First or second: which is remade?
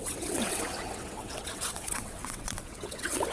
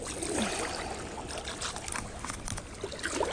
first